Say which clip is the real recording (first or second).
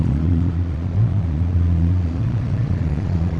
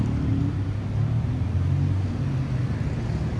second